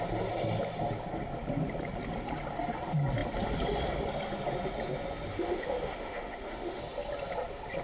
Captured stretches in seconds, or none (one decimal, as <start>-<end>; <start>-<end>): 0.0-5.3; 6.8-7.8